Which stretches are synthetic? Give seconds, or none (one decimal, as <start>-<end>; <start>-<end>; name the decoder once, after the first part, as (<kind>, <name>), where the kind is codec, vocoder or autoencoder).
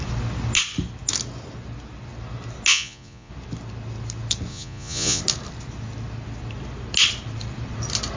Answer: 2.7-3.3 (vocoder, Vocos); 4.5-5.2